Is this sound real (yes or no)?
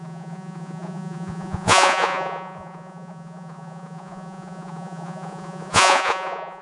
no